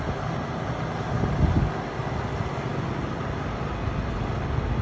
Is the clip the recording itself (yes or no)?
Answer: yes